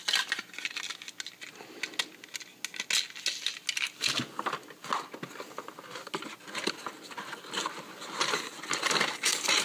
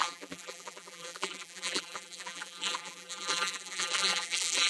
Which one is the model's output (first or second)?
second